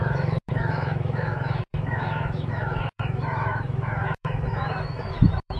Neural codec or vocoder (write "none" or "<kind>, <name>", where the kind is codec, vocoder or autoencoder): autoencoder, DAC-VAE